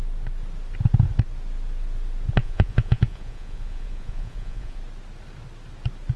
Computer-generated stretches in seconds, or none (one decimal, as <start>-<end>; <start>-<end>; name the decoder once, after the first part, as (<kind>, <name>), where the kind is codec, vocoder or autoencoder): 2.4-4.8 (vocoder, Vocos)